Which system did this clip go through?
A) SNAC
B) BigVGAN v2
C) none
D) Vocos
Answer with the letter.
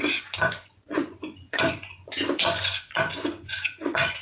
D